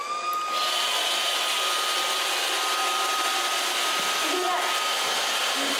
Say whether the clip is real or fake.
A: real